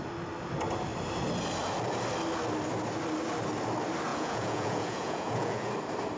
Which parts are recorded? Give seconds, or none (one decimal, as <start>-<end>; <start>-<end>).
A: 0.0-4.1; 5.7-6.2